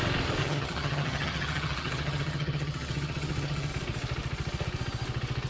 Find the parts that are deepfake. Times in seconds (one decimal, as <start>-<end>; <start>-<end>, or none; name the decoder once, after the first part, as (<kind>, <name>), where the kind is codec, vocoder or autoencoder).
0.4-3.7 (vocoder, HiFi-GAN)